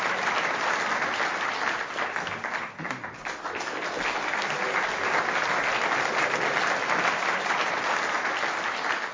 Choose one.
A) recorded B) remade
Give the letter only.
A